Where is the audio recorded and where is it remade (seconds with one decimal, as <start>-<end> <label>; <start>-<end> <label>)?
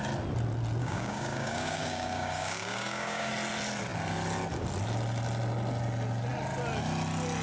0.0-0.8 recorded; 0.8-3.3 remade; 3.3-7.4 recorded